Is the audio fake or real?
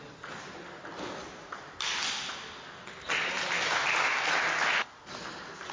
real